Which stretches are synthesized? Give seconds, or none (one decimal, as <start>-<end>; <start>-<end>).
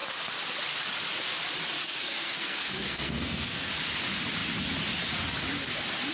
1.8-3.7